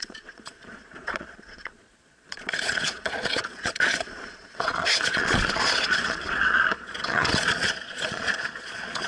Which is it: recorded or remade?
remade